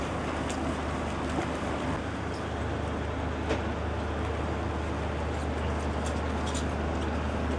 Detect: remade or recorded recorded